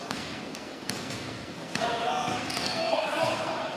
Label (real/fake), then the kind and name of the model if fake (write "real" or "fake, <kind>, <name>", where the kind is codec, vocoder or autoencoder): fake, codec, SNAC